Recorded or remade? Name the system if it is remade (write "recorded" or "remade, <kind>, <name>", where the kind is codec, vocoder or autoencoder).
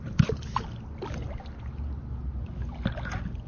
recorded